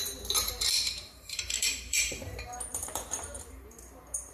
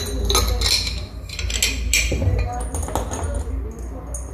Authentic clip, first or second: second